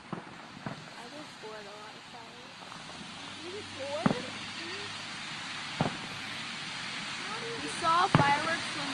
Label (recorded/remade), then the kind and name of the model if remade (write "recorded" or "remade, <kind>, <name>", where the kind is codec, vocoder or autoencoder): recorded